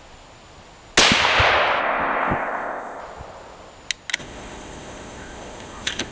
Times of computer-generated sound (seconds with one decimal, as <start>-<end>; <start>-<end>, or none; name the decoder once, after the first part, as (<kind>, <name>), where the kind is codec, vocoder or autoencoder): 1.8-3.0 (codec, ZipCodec); 4.2-6.1